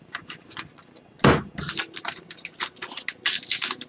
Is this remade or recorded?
recorded